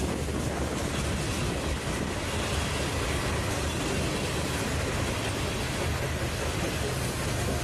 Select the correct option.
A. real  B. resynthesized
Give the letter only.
A